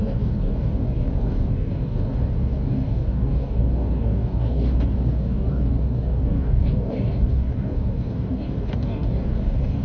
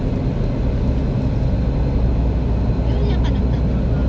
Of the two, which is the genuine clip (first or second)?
second